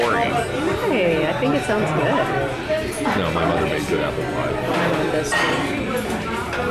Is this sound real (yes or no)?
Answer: yes